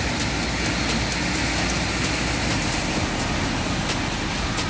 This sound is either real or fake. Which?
real